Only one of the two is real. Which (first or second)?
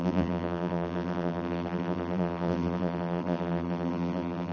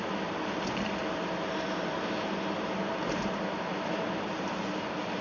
second